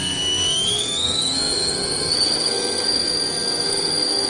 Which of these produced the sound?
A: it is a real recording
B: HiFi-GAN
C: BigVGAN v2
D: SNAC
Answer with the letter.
D